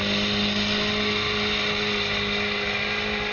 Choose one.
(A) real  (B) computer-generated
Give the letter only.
A